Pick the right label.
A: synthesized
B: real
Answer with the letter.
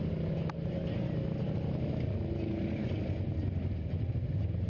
B